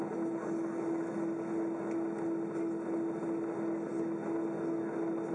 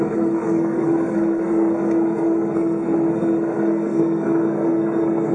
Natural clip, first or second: first